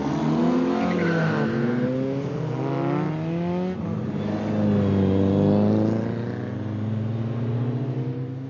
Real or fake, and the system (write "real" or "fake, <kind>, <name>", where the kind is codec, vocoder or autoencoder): real